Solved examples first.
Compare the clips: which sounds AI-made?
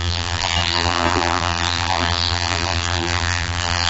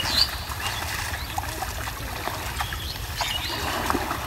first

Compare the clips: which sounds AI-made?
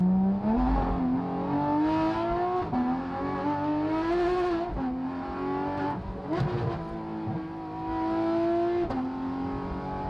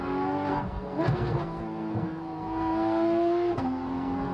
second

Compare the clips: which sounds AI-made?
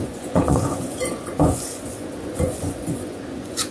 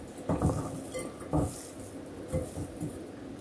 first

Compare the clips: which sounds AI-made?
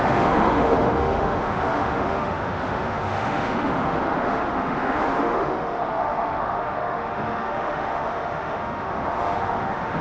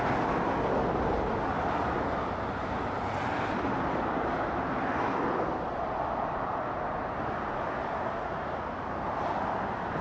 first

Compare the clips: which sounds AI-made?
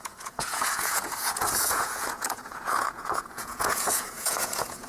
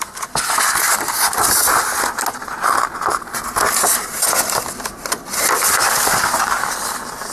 first